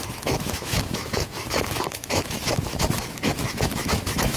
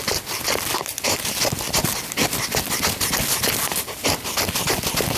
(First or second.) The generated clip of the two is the first